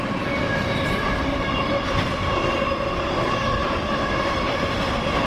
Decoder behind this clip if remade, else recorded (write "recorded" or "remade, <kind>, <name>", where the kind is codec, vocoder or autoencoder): remade, vocoder, BigVGAN v2